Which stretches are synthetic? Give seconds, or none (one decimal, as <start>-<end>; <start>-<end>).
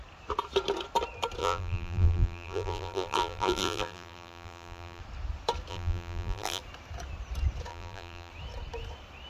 1.4-5.0; 5.7-6.6; 7.7-8.3